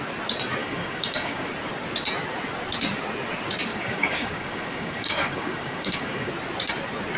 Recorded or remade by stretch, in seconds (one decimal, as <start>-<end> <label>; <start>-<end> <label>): 0.0-0.6 recorded; 0.6-1.5 remade; 1.5-3.7 recorded; 3.7-6.3 remade; 6.3-7.2 recorded